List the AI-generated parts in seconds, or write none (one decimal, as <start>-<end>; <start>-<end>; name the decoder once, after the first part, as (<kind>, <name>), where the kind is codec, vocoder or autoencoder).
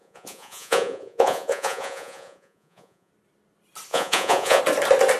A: 0.0-3.1 (vocoder, Vocos); 3.9-4.6